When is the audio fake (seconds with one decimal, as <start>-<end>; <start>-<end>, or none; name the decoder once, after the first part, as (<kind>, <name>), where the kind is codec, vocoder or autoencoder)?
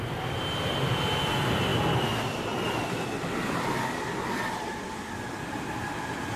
none